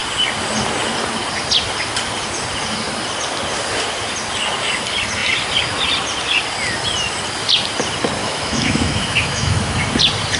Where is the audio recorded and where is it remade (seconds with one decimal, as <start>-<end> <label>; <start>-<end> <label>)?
0.0-8.2 recorded; 8.2-9.9 remade; 9.9-10.4 recorded